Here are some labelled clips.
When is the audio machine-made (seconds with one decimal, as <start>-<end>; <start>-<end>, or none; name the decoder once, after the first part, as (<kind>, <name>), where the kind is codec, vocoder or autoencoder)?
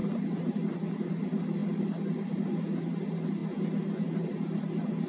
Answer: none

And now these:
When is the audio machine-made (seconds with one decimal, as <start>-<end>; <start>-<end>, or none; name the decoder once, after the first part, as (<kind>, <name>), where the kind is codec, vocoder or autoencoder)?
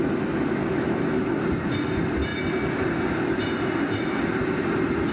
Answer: 0.6-1.4 (autoencoder, DAC-VAE)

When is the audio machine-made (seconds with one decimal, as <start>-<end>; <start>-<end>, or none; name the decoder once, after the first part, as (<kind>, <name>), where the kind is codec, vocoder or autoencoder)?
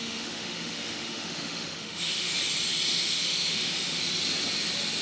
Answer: 0.0-2.3 (autoencoder, DAC-VAE); 2.9-4.0